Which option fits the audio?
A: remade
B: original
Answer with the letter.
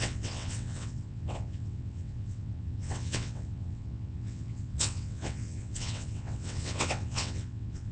A